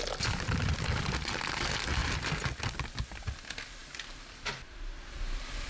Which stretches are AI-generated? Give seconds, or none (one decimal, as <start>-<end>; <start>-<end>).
none

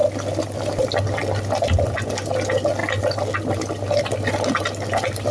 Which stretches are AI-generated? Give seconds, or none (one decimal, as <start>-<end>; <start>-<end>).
2.8-4.6

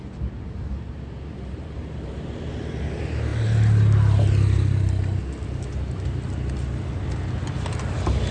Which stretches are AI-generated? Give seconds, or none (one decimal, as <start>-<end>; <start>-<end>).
none

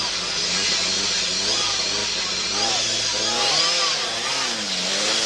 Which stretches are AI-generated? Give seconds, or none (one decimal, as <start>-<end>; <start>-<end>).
none

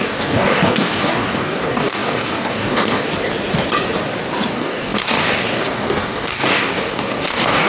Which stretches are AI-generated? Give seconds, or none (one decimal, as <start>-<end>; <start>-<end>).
0.0-3.1; 4.5-7.7

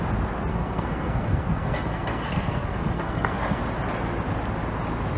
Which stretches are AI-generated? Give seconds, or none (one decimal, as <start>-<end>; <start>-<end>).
0.5-3.6

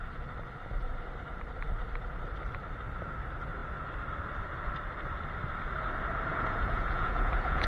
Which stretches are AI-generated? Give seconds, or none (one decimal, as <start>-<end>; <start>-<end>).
6.3-7.7

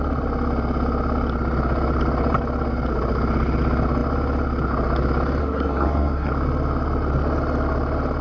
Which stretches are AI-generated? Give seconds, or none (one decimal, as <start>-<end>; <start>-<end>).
5.4-6.3